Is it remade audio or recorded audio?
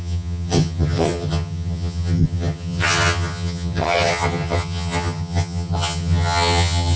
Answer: remade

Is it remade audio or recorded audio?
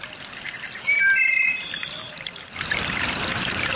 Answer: remade